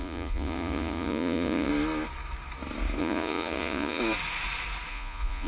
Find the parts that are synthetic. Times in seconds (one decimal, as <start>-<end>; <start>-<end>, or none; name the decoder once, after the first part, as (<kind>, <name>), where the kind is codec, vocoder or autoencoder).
0.0-1.7 (vocoder, Vocos); 3.0-4.0; 4.9-5.5